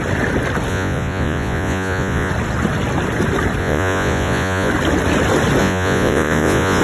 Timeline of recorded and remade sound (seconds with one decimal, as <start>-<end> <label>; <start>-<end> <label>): 0.0-0.7 recorded; 0.7-2.3 remade; 2.3-3.6 recorded; 3.6-4.7 remade; 4.7-5.6 recorded; 5.6-6.8 remade